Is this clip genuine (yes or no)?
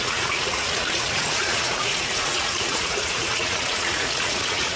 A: no